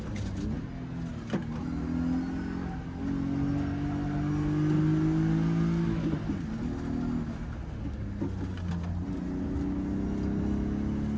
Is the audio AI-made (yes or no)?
no